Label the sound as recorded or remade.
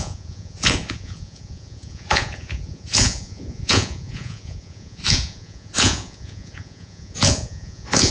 remade